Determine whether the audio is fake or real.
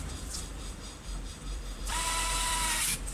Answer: fake